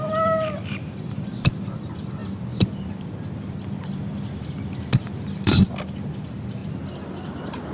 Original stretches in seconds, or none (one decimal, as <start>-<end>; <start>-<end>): 6.6-7.1